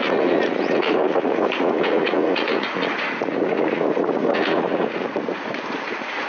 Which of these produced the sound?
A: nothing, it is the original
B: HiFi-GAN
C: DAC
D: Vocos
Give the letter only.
D